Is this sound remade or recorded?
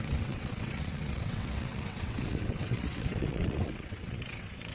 remade